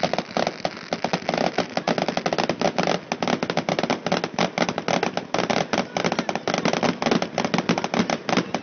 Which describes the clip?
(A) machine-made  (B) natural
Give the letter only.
B